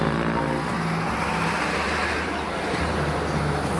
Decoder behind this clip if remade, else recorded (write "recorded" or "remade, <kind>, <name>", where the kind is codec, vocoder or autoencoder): recorded